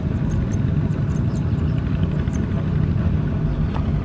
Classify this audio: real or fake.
real